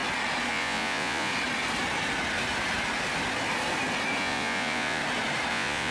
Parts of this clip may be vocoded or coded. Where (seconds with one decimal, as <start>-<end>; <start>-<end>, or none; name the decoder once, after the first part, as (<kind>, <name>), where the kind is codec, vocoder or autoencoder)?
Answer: 0.5-1.3 (vocoder, Vocos); 4.2-5.0; 5.5-5.9